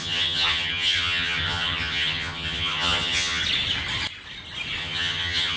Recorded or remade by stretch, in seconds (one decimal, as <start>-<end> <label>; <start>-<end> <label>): 0.0-3.4 remade; 3.4-4.8 recorded; 4.8-5.6 remade